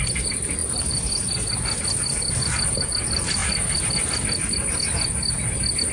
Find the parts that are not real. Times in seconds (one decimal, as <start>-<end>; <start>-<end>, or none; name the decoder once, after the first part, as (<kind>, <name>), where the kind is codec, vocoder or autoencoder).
none